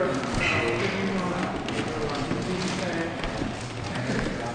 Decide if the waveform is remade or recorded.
recorded